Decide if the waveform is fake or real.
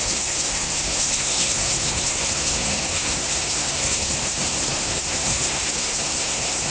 fake